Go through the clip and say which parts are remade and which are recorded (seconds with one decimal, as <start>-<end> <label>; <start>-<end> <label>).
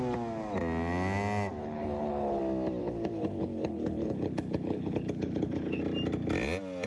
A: 0.0-1.6 recorded; 1.6-2.4 remade; 2.4-2.8 recorded; 2.8-5.8 remade; 5.8-6.9 recorded